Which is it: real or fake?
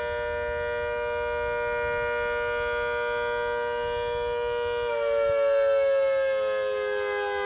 real